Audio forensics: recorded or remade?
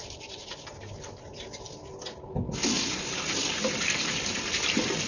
recorded